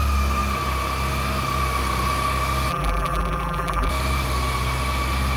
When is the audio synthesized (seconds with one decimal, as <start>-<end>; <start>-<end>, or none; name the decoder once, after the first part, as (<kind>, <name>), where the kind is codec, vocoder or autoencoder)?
2.7-3.9 (vocoder, BigVGAN v2)